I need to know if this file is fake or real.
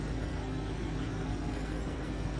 fake